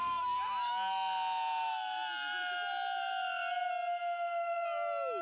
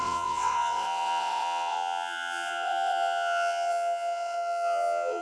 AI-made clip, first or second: second